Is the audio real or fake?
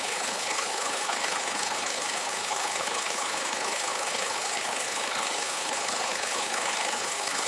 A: fake